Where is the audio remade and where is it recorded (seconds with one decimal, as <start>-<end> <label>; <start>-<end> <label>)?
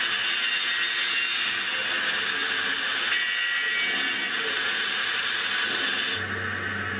0.0-7.0 recorded